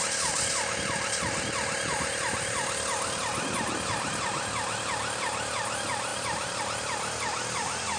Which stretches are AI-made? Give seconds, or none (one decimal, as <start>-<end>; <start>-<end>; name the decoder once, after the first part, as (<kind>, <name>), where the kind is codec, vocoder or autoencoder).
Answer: none